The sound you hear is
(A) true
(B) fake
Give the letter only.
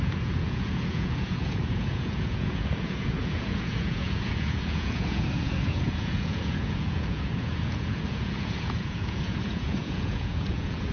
B